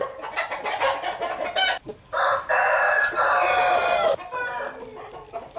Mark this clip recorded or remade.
recorded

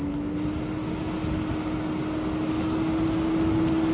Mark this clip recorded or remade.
recorded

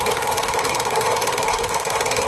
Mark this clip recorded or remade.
remade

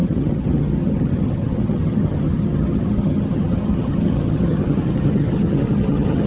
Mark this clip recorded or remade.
remade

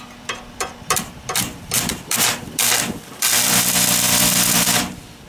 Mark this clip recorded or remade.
remade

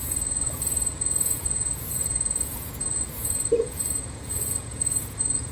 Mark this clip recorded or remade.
remade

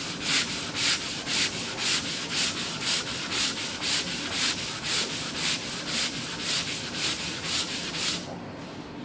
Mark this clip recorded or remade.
remade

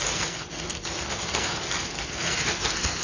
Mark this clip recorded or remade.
remade